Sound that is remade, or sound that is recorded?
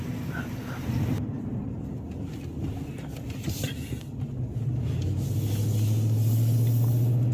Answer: recorded